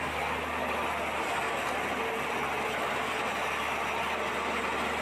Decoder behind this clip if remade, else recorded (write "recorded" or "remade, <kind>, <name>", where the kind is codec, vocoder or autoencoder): recorded